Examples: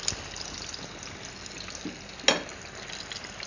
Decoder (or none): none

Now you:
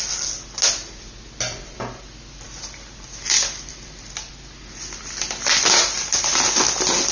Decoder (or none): none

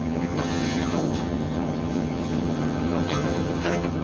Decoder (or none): vocoder, HiFi-GAN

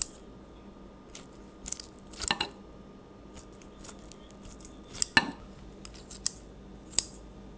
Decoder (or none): none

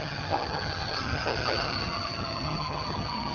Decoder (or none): vocoder, HiFi-GAN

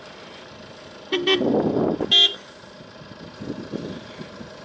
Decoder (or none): none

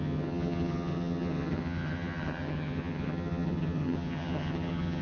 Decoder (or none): vocoder, HiFi-GAN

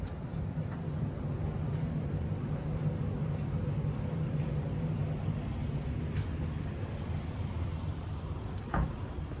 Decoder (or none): none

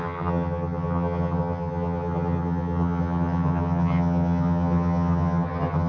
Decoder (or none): vocoder, HiFi-GAN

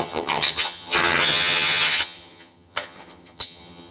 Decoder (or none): vocoder, HiFi-GAN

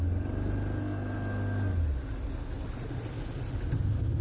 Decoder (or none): none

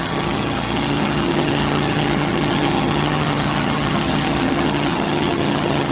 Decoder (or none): vocoder, HiFi-GAN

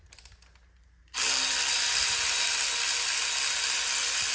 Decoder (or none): none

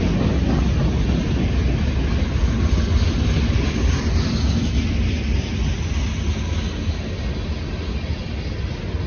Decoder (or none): none